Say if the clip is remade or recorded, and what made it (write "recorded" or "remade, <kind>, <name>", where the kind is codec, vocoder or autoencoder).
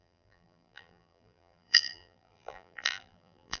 remade, vocoder, BigVGAN v2